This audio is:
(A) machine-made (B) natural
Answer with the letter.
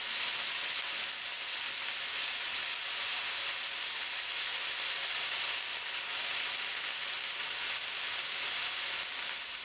B